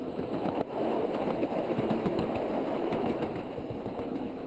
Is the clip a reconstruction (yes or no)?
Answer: yes